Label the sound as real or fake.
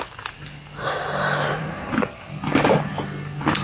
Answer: real